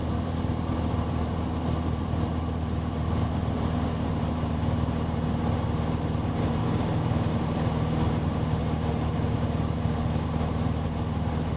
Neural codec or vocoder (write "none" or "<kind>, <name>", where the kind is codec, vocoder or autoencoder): vocoder, BigVGAN v2